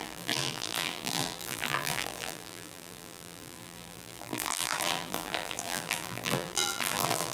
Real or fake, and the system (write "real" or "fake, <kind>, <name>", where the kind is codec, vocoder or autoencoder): fake, vocoder, BigVGAN v2